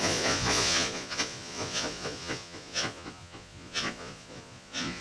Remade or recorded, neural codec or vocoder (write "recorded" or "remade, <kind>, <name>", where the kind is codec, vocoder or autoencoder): remade, vocoder, Vocos